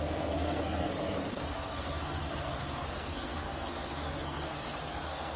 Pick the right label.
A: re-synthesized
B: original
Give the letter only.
A